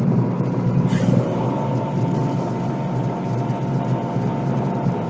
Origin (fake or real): fake